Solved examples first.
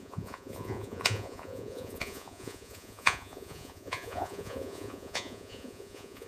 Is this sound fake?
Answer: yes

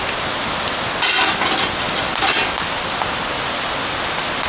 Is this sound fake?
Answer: no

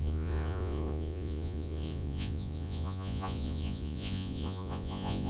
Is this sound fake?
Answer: yes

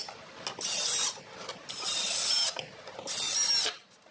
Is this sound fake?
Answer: no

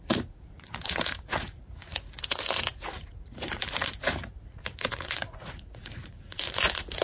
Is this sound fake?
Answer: yes